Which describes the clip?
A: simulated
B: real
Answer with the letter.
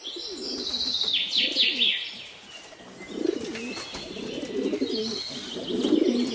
B